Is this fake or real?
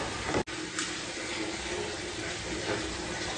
real